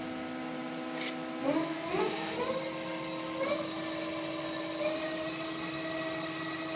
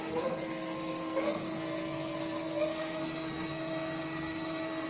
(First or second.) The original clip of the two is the first